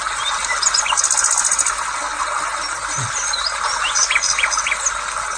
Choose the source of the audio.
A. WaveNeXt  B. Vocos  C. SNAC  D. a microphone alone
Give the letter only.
D